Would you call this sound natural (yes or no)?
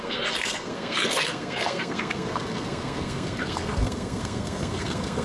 no